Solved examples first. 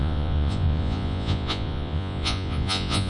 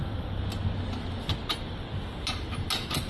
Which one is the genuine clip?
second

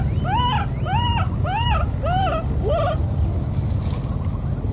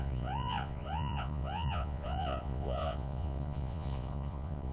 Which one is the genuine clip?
first